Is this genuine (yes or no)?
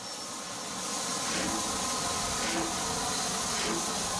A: yes